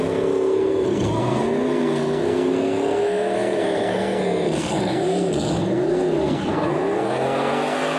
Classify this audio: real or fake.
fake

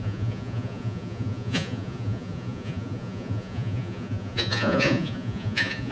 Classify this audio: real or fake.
fake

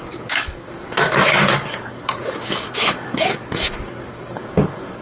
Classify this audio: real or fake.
fake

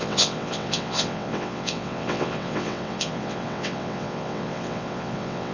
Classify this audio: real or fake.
fake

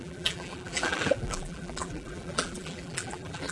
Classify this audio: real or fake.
fake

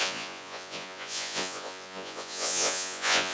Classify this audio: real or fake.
fake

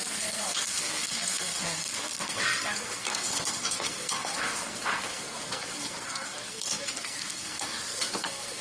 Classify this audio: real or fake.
fake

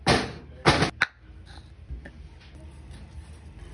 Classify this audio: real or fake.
real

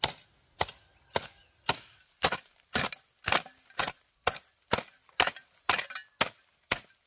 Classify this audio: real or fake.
real